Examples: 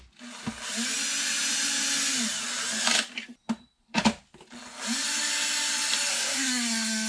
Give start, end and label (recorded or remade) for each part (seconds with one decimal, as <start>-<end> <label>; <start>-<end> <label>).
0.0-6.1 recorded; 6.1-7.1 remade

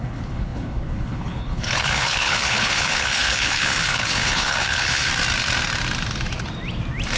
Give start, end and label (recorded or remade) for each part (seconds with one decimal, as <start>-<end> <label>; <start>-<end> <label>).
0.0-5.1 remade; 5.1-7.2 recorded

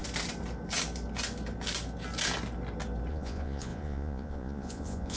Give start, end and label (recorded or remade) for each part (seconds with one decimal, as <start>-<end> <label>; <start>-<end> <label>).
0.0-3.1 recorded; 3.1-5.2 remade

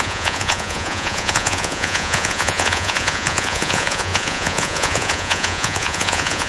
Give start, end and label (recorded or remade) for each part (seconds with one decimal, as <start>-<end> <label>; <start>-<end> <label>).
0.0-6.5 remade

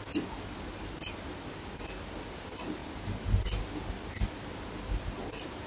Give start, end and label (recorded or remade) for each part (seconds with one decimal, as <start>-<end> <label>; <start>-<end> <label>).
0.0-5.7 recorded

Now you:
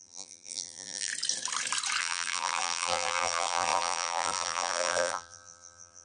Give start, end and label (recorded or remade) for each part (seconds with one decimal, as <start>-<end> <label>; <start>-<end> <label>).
0.0-1.1 remade; 1.1-2.0 recorded; 2.0-6.0 remade

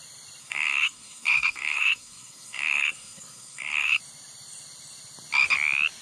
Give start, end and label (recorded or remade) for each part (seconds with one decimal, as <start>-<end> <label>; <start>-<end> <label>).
0.0-0.4 recorded; 0.4-4.0 remade; 4.0-6.0 recorded